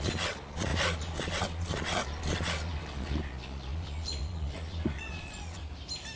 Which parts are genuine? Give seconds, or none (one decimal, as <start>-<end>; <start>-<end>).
5.6-6.2